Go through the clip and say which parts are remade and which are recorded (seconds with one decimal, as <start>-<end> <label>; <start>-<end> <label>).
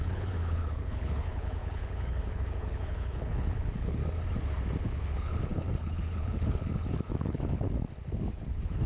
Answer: 0.0-4.0 remade; 4.0-4.8 recorded; 4.8-8.9 remade